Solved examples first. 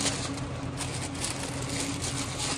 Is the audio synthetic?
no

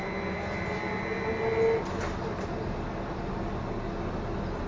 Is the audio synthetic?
no